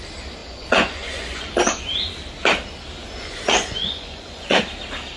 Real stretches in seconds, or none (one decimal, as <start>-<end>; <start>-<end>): 0.0-0.4; 2.1-3.0; 4.6-5.2

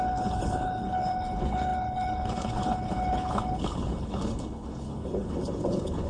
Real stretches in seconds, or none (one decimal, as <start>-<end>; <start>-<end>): none

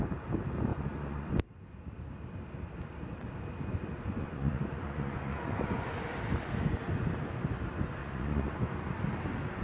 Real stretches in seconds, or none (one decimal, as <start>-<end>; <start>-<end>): 0.0-0.7; 1.3-4.2; 5.9-8.0; 8.9-9.6

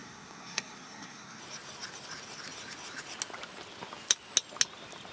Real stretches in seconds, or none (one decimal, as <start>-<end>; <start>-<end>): 1.4-5.1

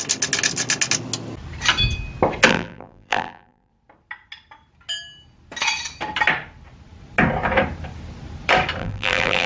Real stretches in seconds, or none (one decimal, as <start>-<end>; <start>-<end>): 0.0-2.5; 3.7-8.8

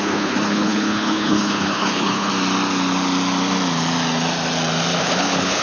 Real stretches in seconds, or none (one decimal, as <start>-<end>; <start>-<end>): 2.3-5.0